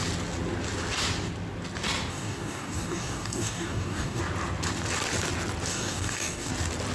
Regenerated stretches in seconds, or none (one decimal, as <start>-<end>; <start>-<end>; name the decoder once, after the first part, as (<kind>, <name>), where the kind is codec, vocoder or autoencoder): 2.1-4.2 (codec, DAC); 5.7-6.5